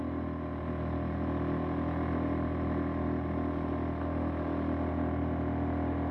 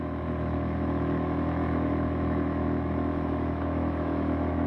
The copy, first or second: second